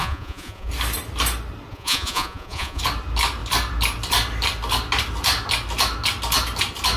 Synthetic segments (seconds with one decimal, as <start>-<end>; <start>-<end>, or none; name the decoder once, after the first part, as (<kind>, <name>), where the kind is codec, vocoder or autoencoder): 0.0-0.7 (vocoder, Vocos); 1.7-2.8